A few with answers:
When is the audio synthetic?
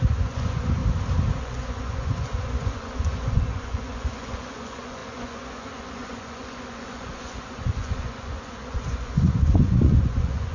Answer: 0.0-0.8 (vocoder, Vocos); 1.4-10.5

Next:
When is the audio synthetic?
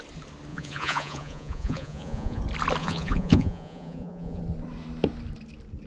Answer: 0.5-2.4 (vocoder, Vocos); 2.8-4.4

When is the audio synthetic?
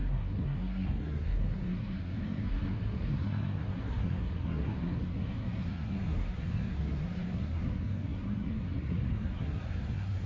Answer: 0.0-10.3 (codec, SNAC)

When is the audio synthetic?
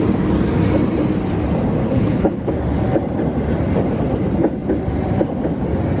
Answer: 1.8-2.5 (codec, HILCodec)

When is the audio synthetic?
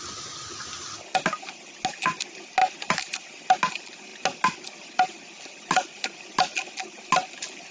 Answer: none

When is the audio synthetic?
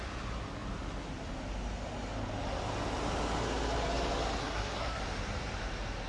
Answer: 4.4-5.0 (codec, SNAC)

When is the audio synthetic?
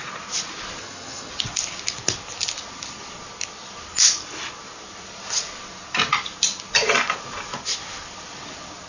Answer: 0.8-1.3 (vocoder, HiFi-GAN)